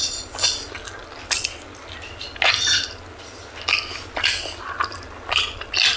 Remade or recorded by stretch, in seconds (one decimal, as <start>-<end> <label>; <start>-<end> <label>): 0.0-6.0 recorded

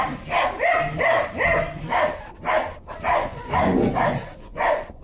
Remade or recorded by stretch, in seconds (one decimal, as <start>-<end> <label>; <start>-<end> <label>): 0.0-3.1 recorded; 3.1-5.0 remade

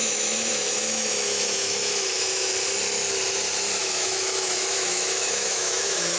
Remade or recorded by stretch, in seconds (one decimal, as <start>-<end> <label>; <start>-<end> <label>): 0.0-2.5 remade; 2.5-3.8 recorded; 3.8-6.2 remade

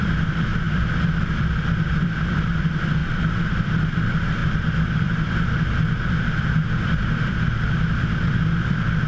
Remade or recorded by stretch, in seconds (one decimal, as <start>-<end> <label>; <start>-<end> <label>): 0.0-3.0 remade; 3.0-3.7 recorded; 3.7-9.1 remade

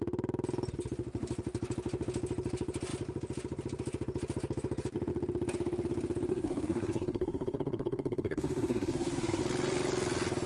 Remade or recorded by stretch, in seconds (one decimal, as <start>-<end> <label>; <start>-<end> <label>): 0.0-6.3 recorded; 6.3-9.4 remade; 9.4-10.5 recorded

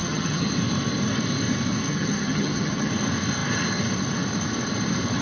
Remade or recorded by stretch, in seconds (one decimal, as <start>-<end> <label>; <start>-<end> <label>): 0.0-0.5 remade; 0.5-1.9 recorded; 1.9-2.9 remade; 2.9-5.2 recorded